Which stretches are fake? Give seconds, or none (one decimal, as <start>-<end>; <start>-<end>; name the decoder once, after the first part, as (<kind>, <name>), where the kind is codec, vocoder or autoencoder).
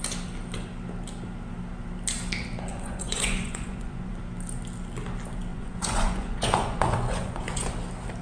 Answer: 2.7-4.1 (vocoder, Vocos); 5.5-7.7